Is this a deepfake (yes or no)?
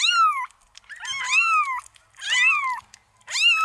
no